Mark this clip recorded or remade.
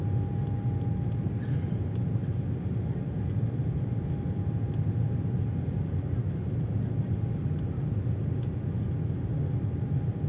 recorded